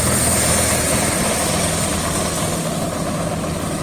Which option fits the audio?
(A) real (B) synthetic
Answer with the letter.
A